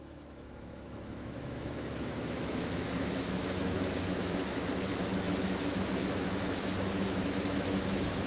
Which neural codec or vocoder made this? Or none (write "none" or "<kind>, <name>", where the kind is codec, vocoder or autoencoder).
autoencoder, DAC-VAE